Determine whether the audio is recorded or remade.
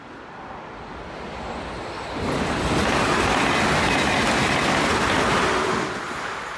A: recorded